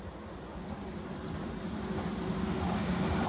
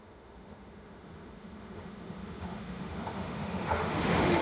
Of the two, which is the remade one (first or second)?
second